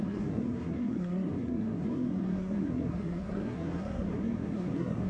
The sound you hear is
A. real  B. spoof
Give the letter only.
B